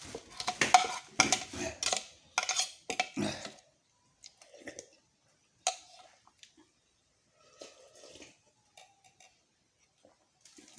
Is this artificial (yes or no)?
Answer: no